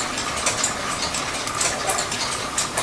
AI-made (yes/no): no